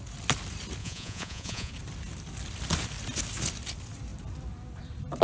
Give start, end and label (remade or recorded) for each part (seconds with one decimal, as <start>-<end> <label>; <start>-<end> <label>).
0.0-0.8 recorded; 0.8-1.7 remade; 1.7-5.2 recorded